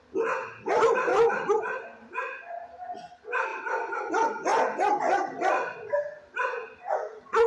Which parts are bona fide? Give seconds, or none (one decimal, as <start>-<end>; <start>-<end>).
0.0-7.5